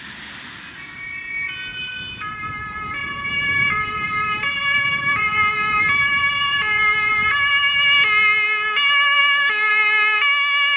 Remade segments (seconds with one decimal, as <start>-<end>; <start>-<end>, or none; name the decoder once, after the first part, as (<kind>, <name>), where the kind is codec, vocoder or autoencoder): 3.0-7.3 (vocoder, BigVGAN v2)